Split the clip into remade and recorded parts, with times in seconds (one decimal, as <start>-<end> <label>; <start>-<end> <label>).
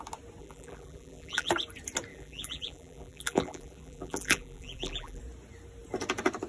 0.0-0.4 recorded; 0.4-1.5 remade; 1.5-2.1 recorded; 2.1-5.2 remade; 5.2-6.5 recorded